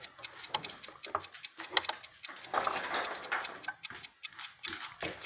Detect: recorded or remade recorded